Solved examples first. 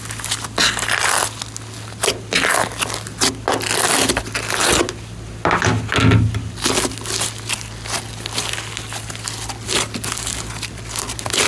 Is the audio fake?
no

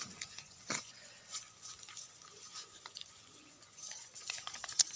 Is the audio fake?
yes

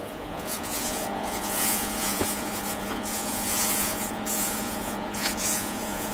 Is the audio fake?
yes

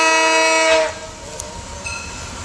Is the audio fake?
no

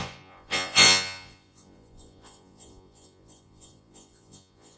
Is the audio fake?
yes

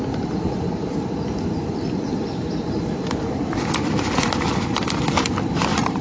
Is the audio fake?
no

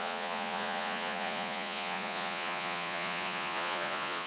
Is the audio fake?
yes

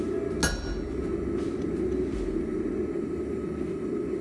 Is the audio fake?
no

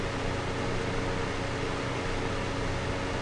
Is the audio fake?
no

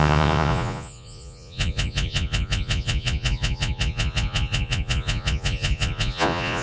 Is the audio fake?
yes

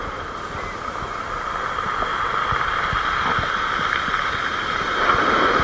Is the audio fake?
no